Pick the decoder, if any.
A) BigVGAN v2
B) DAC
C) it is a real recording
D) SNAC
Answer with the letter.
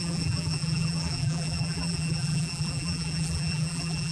A